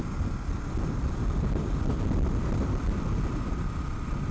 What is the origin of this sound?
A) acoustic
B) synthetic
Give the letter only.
A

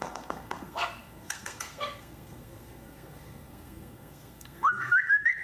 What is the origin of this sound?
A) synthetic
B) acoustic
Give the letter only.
A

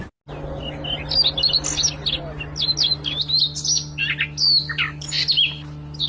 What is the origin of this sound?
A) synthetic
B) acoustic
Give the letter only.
B